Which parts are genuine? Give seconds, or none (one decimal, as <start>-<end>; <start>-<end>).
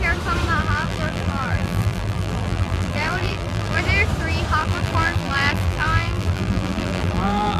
0.0-0.6; 3.8-4.6